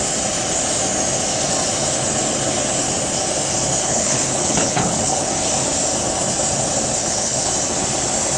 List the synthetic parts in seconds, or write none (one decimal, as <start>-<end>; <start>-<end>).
3.8-5.3; 7.0-7.5